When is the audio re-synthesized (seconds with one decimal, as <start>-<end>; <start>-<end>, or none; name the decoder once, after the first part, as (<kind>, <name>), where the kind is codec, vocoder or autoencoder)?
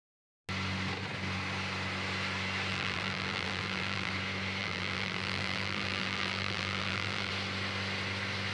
2.7-4.1 (vocoder, BigVGAN v2); 4.6-7.3